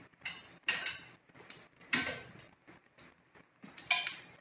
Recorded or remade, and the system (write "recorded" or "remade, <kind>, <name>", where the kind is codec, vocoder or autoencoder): recorded